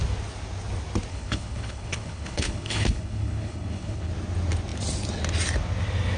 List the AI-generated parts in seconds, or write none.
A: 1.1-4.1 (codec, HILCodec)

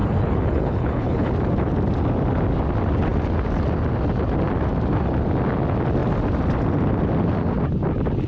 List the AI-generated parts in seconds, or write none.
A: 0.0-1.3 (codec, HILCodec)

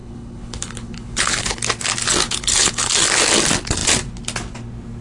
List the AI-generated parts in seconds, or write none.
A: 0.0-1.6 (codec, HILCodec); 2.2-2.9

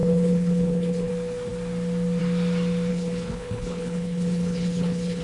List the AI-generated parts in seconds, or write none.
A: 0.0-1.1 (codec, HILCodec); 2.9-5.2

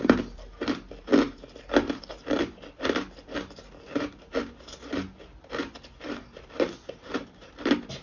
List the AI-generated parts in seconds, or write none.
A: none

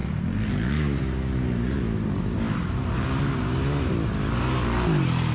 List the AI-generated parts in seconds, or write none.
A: none

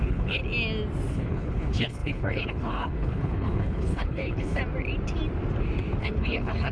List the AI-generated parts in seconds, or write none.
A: 0.0-0.4 (codec, HILCodec); 1.1-4.6; 6.0-6.7